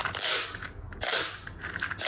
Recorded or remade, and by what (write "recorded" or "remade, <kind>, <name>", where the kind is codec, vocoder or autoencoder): recorded